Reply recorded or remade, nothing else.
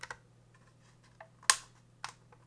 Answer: recorded